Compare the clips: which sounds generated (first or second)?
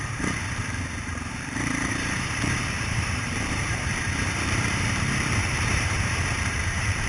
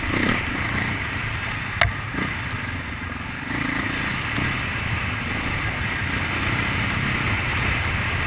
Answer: first